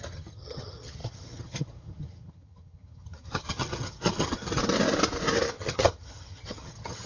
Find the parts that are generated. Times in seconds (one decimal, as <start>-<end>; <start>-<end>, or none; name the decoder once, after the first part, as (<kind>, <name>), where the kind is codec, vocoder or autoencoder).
0.0-4.6 (vocoder, HiFi-GAN); 5.6-7.1